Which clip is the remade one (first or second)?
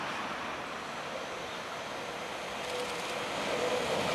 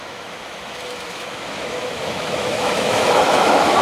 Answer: second